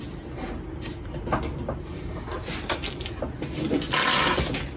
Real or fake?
real